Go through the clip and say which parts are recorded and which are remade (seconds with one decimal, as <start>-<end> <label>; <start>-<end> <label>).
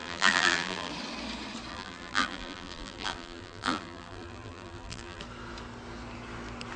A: 0.0-0.9 remade; 0.9-1.7 recorded; 1.7-5.2 remade; 5.2-6.8 recorded